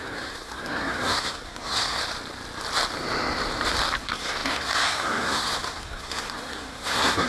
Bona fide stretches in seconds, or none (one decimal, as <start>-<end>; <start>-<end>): 2.0-4.0